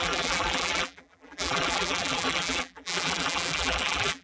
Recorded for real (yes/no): no